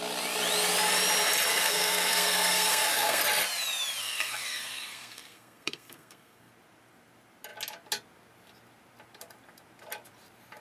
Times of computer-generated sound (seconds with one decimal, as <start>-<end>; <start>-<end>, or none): 1.5-3.2; 4.0-6.5